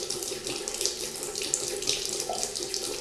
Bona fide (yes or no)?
no